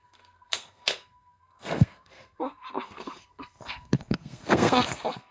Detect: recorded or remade remade